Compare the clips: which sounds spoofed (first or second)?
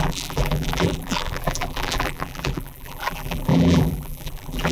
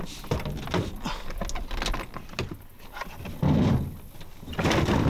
first